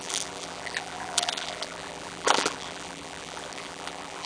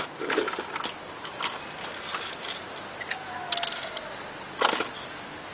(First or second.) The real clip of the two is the second